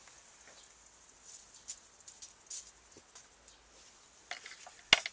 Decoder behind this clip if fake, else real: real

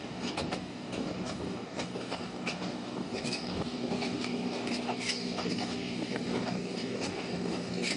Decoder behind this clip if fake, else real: fake, codec, DAC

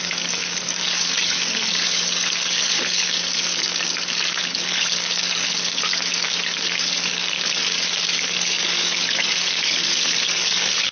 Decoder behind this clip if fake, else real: fake, codec, DAC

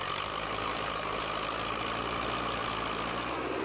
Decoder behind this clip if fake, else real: real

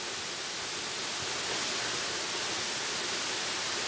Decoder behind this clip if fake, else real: real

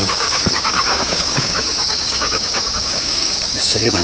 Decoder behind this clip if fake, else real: fake, codec, DAC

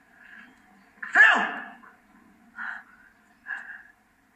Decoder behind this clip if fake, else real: real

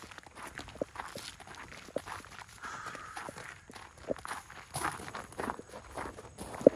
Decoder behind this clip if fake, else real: real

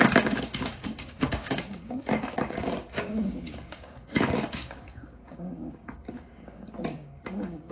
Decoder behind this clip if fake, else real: fake, codec, DAC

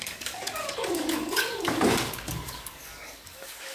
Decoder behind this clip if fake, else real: fake, codec, DAC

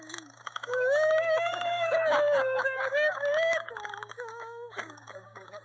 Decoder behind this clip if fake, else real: fake, codec, DAC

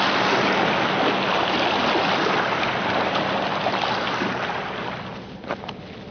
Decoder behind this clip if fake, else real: real